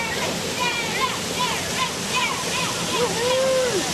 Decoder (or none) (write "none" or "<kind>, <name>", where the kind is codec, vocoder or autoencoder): none